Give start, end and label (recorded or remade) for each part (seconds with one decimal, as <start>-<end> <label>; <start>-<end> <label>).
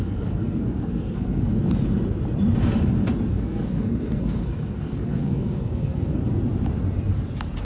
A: 0.0-1.5 remade; 1.5-3.3 recorded; 3.3-6.2 remade; 6.2-7.6 recorded